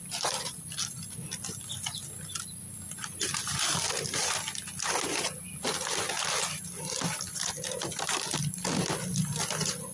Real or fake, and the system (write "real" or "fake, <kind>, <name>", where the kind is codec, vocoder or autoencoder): real